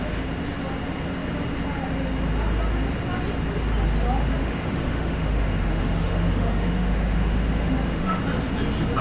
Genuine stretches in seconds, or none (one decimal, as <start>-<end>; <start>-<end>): 0.0-4.4; 8.2-9.0

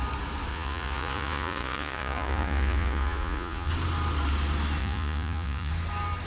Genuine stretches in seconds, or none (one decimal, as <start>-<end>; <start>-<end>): 0.0-0.5; 3.7-4.8; 5.7-6.3

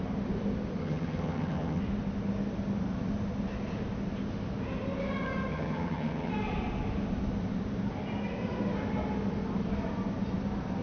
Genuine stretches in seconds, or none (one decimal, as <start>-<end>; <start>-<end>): 0.0-0.8; 1.8-5.5; 6.3-10.8

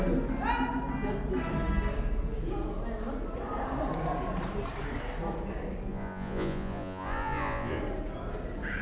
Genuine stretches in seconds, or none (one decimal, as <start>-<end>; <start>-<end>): 0.0-5.9; 7.8-8.8

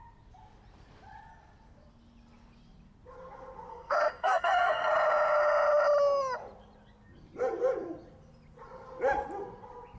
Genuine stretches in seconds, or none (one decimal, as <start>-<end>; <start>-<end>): 0.0-3.7; 4.9-10.0

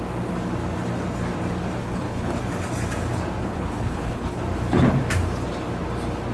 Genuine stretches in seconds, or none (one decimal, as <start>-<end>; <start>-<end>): 0.0-1.8; 2.4-3.4; 4.4-6.3